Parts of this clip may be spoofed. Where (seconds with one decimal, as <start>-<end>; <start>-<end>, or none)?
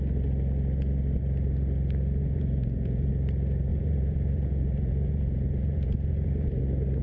2.2-3.1; 3.7-6.6